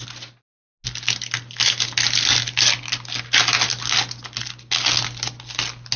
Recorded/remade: recorded